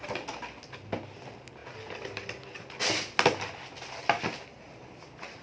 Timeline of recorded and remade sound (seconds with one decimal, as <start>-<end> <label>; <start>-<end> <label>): 0.0-5.4 recorded